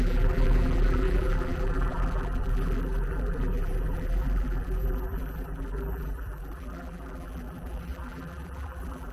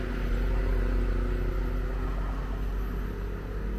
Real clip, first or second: second